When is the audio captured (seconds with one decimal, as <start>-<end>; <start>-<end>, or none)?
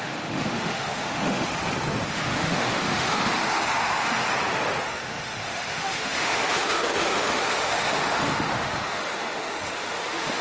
1.5-2.1; 4.2-4.8